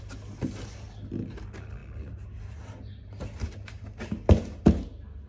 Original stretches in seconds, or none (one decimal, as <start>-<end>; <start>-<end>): 0.0-5.3